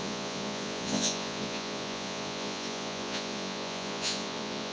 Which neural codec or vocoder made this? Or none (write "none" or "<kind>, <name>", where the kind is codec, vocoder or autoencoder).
vocoder, Vocos